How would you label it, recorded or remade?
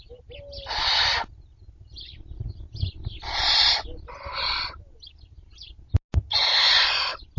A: recorded